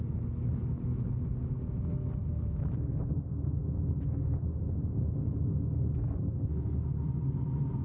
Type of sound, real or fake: real